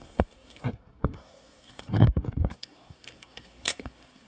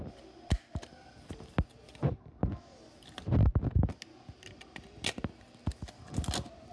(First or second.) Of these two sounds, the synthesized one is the first